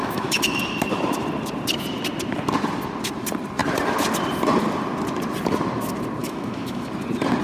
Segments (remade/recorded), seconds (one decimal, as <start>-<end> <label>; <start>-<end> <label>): 0.0-0.6 remade; 0.6-6.2 recorded; 6.2-6.9 remade; 6.9-7.4 recorded